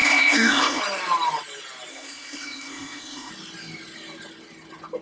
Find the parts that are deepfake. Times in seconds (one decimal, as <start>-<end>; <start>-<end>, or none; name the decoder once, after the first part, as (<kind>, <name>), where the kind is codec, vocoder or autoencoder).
0.0-0.8 (codec, ZipCodec); 1.9-3.3